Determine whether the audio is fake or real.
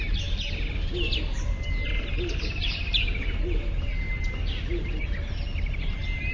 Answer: real